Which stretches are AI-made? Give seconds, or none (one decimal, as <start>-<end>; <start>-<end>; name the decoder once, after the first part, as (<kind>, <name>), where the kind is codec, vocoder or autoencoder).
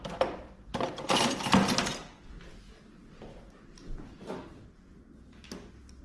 none